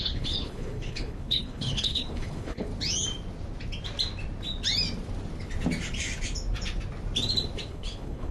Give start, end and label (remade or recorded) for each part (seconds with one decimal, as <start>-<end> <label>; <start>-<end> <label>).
0.0-2.7 remade; 2.7-7.7 recorded; 7.7-8.3 remade